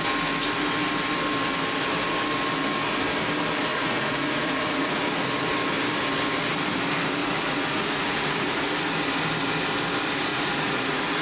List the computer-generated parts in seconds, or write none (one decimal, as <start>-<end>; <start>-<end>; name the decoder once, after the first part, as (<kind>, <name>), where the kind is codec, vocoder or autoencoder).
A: 3.7-5.0 (vocoder, Vocos); 7.2-8.7; 10.3-11.2